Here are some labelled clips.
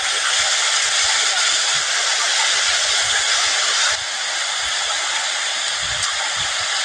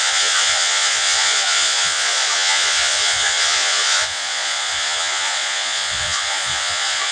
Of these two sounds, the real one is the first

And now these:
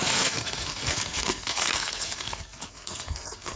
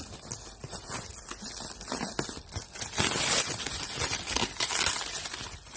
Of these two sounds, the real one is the second